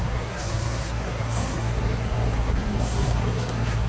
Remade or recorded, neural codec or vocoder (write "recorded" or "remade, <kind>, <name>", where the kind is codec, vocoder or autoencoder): remade, codec, SNAC